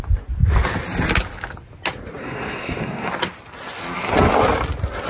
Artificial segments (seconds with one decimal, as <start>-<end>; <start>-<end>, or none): 2.2-3.1